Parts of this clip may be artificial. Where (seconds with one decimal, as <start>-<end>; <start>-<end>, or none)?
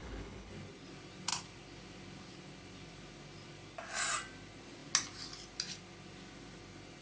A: 0.0-0.5